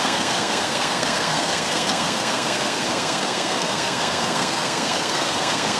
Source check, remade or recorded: remade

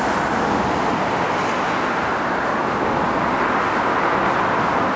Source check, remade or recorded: recorded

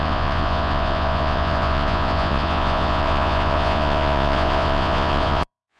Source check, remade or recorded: remade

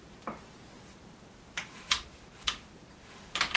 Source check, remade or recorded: recorded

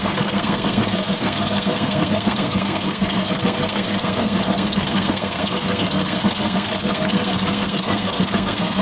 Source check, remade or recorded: remade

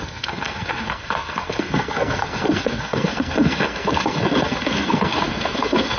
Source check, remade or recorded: remade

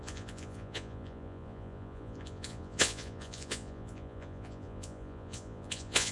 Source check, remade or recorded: remade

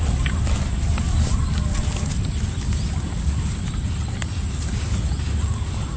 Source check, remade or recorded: recorded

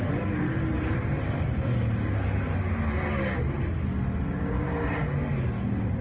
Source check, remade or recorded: recorded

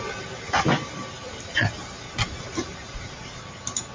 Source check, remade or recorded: recorded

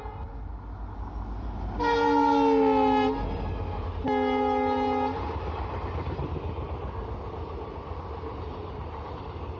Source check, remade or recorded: recorded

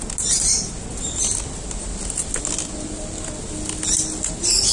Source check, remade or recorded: recorded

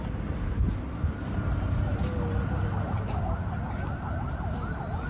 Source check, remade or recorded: recorded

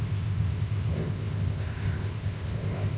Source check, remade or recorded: remade